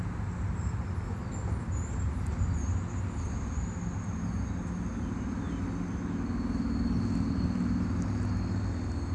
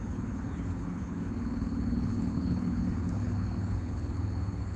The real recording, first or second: first